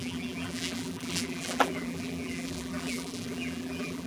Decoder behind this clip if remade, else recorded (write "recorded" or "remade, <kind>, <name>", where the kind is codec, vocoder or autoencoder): remade, vocoder, BigVGAN v2